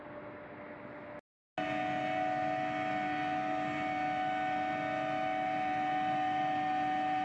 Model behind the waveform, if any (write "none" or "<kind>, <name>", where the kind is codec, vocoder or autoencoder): none